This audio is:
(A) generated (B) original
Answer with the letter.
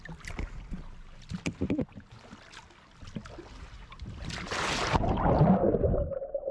B